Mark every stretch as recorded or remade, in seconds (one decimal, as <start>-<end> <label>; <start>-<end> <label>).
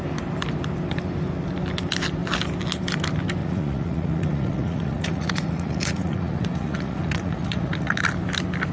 0.0-3.4 recorded; 3.4-8.0 remade; 8.0-8.7 recorded